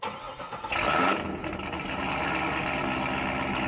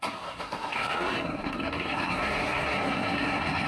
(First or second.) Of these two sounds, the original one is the first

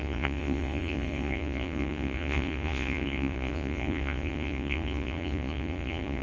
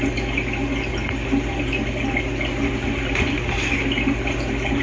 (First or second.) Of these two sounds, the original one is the second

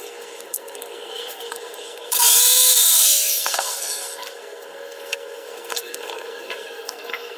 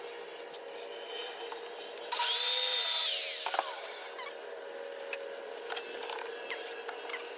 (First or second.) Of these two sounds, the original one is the second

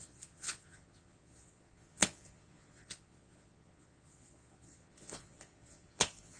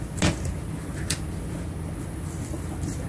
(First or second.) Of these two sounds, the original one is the second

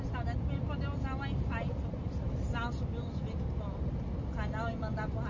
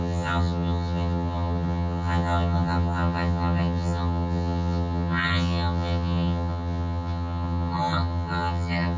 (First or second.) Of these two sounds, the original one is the first